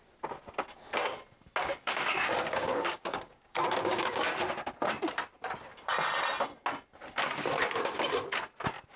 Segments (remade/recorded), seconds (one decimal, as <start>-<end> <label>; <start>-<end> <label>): 0.0-1.6 recorded; 1.6-4.3 remade; 4.3-9.0 recorded